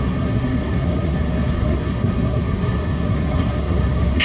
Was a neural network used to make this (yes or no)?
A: yes